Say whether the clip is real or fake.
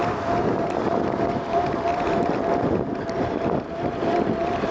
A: real